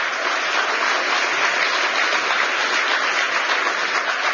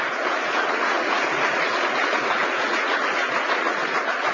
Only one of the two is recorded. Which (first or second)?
first